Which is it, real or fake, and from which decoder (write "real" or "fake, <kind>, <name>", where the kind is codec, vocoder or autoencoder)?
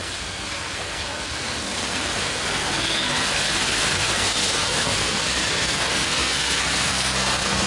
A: fake, codec, SNAC